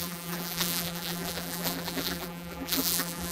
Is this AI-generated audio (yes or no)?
yes